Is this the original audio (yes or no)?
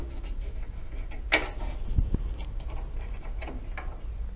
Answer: yes